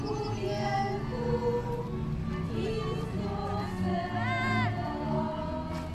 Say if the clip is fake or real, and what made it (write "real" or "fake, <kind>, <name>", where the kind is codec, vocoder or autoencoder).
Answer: real